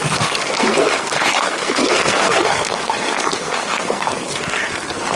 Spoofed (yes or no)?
yes